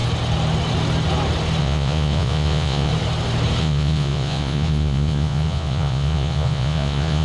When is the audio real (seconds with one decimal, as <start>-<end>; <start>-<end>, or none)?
0.0-1.6; 2.9-3.6